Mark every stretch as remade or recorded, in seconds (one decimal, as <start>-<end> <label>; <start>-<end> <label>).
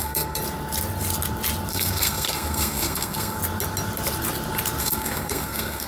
0.0-0.4 remade; 0.4-1.7 recorded; 1.7-3.4 remade; 3.4-4.8 recorded; 4.8-5.9 remade